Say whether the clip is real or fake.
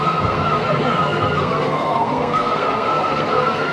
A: fake